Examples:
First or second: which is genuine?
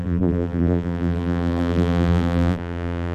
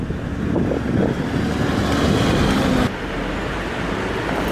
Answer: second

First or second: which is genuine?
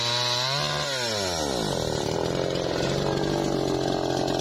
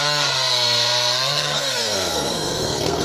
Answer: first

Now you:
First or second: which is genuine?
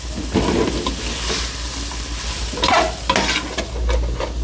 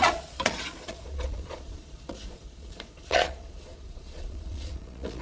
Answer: first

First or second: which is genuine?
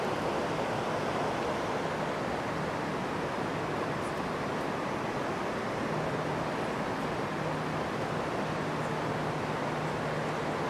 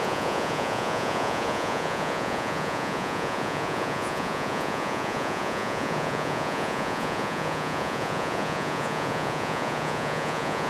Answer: first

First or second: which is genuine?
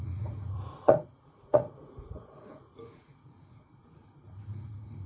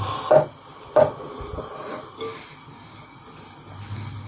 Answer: second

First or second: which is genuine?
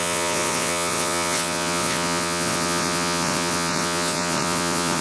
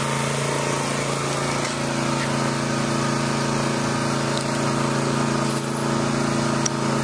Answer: second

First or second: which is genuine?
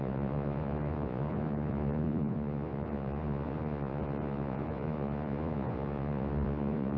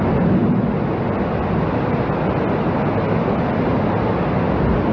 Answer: second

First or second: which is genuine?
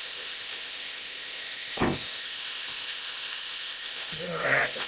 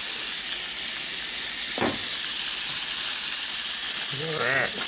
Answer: second